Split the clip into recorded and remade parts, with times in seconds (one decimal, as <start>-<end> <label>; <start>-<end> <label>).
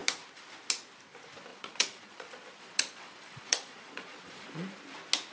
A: 0.0-1.5 recorded; 1.5-4.7 remade; 4.7-5.3 recorded